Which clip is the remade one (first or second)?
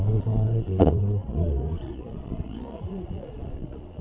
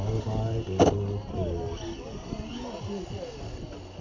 first